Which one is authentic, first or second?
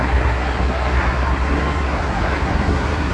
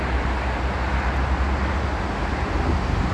second